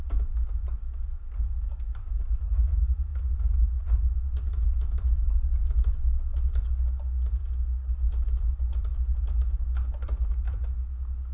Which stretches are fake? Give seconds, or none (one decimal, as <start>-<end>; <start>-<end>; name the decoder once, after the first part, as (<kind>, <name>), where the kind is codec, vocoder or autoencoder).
none